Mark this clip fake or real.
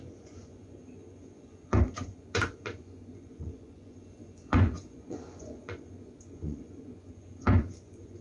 fake